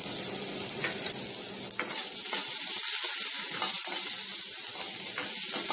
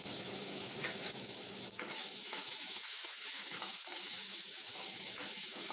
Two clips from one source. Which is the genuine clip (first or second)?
first